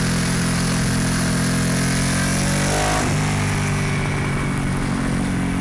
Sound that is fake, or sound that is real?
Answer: real